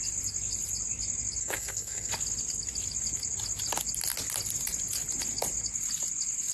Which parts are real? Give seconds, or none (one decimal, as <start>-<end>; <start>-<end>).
0.0-1.4; 2.1-6.5